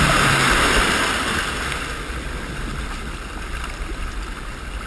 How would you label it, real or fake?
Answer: real